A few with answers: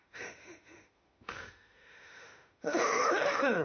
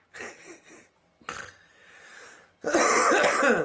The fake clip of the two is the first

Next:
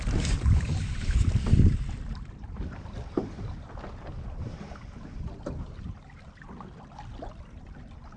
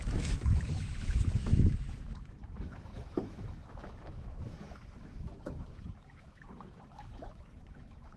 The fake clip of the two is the second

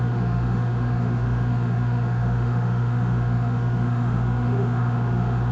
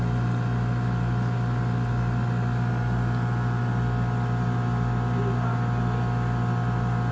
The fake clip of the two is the first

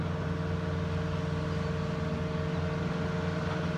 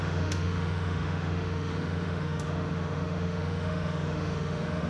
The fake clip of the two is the second